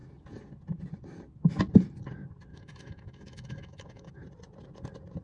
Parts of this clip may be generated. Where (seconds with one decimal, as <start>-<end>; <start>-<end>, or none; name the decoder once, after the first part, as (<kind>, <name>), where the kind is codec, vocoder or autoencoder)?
2.5-4.1 (autoencoder, DAC-VAE)